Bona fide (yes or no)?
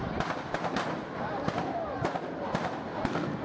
no